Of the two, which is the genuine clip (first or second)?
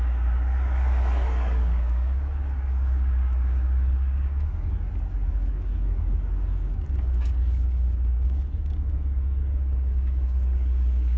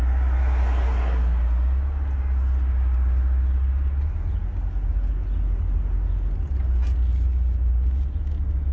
second